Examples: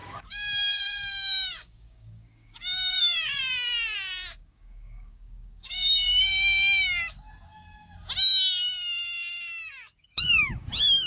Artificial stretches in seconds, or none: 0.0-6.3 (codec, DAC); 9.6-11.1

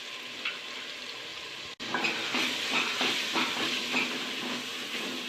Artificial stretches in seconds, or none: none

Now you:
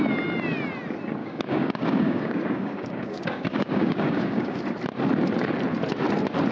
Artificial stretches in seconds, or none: 1.2-4.6 (codec, DAC)

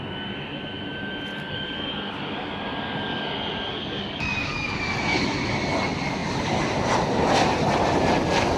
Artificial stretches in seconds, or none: 1.3-3.3 (codec, DAC); 3.7-4.7

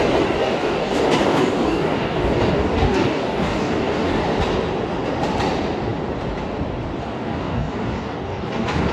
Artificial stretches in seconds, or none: 0.4-4.2 (codec, DAC); 7.0-8.9